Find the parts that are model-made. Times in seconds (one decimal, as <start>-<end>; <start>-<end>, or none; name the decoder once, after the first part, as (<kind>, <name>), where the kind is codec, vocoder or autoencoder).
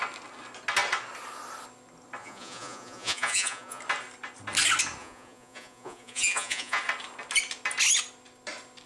2.2-3.8 (vocoder, Vocos); 5.0-6.8